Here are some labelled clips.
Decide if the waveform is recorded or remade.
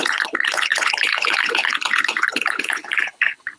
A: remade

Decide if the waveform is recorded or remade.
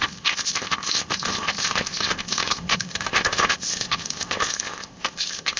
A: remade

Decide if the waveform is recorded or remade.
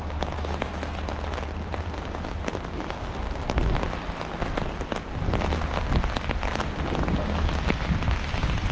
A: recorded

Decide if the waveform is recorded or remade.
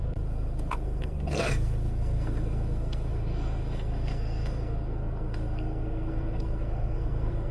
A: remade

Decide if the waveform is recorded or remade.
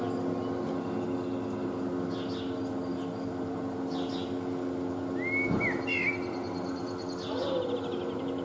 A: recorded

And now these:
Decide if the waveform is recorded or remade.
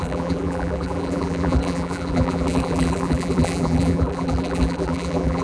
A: remade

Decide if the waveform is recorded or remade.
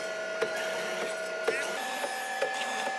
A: recorded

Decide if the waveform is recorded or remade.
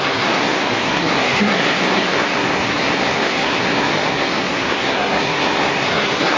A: remade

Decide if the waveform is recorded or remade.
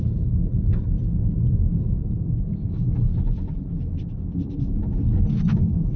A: recorded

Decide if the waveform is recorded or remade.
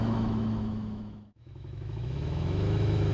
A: remade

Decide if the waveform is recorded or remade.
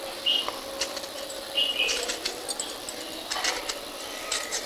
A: remade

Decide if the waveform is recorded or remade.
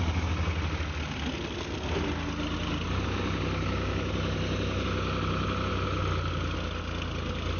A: recorded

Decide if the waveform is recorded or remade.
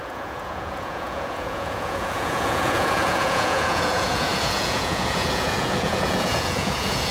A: remade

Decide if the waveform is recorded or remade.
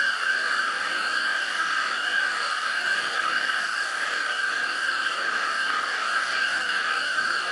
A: remade